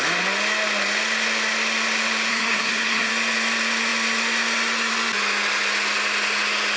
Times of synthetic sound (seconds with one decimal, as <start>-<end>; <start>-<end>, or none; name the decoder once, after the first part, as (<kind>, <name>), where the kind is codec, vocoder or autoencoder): 2.3-3.1 (codec, SNAC)